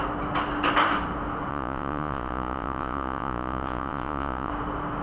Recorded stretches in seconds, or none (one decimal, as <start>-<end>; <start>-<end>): 0.0-1.5; 4.5-5.0